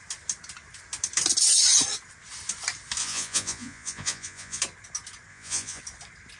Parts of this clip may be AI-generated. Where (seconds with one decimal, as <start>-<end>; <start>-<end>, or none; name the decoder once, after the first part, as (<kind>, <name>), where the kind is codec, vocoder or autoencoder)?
3.0-4.6 (vocoder, Vocos); 5.3-5.8